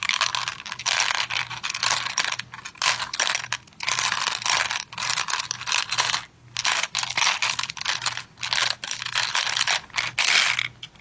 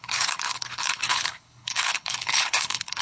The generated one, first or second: second